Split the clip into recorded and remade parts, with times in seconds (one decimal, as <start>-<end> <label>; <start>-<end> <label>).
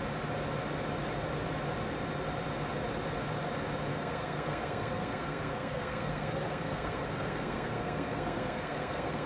0.0-3.9 recorded; 3.9-9.3 remade